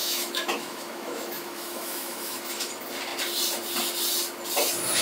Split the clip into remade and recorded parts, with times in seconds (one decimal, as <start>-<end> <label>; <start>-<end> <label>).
0.0-2.7 remade; 2.7-5.0 recorded